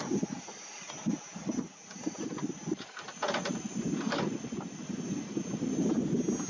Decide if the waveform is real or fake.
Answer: real